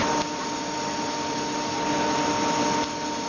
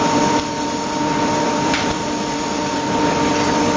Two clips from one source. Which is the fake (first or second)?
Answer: second